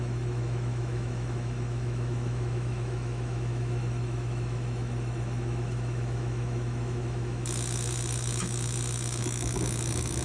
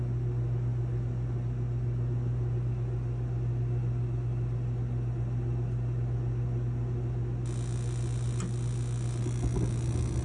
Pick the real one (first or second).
second